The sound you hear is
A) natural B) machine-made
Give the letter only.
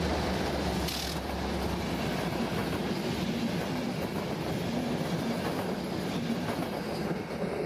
A